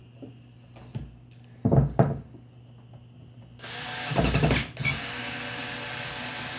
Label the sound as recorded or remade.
recorded